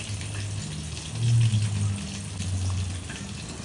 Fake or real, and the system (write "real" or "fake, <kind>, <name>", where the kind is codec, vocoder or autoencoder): real